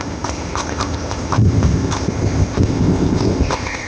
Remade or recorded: remade